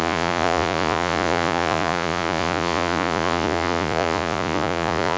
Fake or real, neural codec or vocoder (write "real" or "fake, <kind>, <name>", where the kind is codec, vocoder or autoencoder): fake, vocoder, Vocos